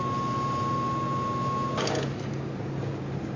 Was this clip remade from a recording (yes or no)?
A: no